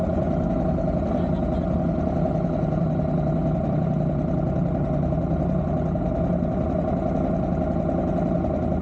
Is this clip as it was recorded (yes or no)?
yes